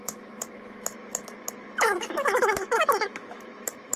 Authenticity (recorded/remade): remade